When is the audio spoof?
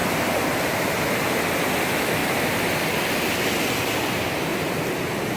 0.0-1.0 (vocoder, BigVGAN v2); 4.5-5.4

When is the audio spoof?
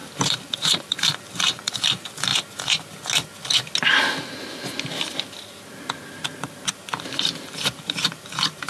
0.0-2.3 (vocoder, BigVGAN v2); 6.1-8.7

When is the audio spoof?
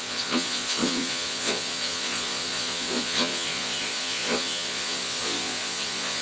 0.0-6.2 (vocoder, Vocos)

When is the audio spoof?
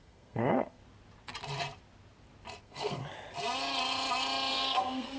0.0-0.8 (codec, SNAC); 2.6-3.0; 4.5-5.2